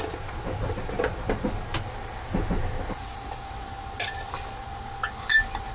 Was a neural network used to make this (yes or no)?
no